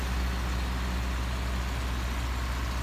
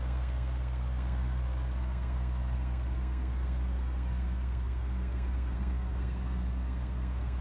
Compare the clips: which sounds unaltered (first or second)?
first